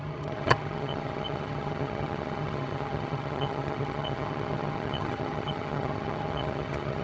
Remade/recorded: remade